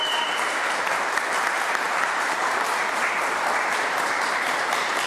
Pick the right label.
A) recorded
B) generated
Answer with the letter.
B